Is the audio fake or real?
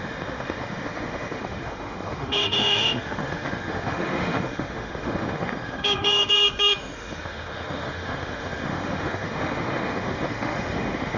fake